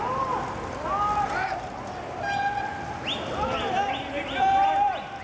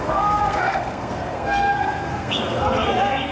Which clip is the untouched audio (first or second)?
first